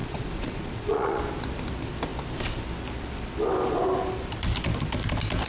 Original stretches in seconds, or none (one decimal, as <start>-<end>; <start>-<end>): 1.2-5.5

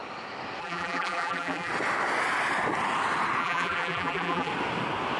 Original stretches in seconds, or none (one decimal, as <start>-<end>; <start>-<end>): 0.0-0.6; 1.7-3.4; 4.5-5.2

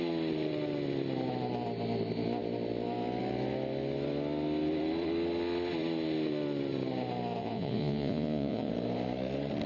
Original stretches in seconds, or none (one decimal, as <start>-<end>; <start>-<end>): 0.0-7.4; 8.7-9.7

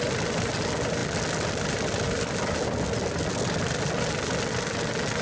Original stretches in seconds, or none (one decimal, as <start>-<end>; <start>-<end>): 0.0-5.2

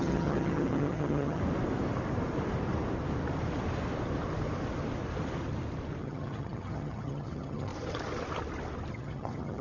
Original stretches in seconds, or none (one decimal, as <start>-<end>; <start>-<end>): 1.4-6.0; 7.7-8.9

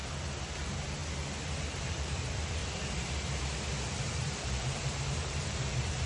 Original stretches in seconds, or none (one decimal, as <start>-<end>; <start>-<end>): 0.0-0.5; 1.0-1.6; 2.6-4.2

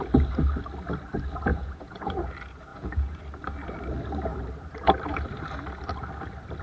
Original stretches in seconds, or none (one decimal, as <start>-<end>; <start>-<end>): 0.0-1.5; 2.2-2.7; 3.2-6.6

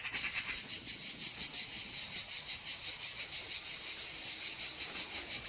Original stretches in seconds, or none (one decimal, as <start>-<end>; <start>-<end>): 0.0-4.7